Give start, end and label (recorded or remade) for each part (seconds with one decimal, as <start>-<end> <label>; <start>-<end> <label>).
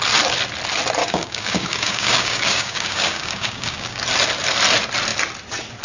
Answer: 0.0-1.0 recorded; 1.0-4.0 remade; 4.0-5.8 recorded